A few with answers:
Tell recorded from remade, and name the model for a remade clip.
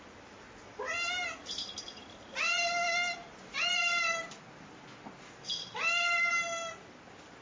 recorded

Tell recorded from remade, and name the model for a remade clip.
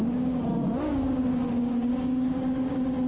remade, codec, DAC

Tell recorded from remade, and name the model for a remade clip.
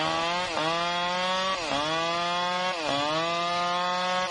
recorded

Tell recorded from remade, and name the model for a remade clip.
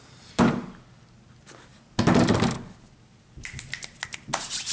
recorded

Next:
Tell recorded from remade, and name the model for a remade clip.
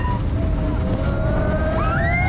recorded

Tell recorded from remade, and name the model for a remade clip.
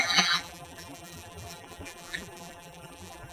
remade, vocoder, BigVGAN v2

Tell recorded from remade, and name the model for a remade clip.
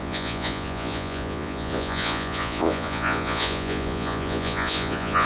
remade, vocoder, Vocos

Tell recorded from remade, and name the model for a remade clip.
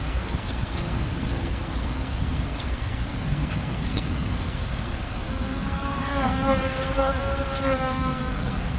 remade, codec, SNAC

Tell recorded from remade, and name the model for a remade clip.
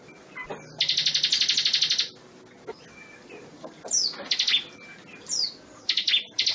recorded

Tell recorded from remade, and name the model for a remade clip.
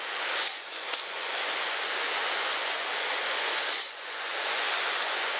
remade, vocoder, Vocos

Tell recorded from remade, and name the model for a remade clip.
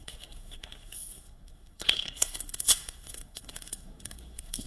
remade, codec, SNAC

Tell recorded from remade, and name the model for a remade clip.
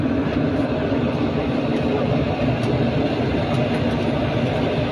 recorded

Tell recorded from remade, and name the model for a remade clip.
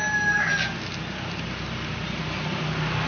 recorded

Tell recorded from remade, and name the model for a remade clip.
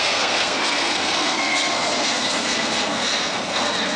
remade, codec, SNAC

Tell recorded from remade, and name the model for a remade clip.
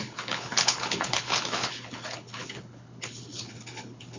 remade, codec, HILCodec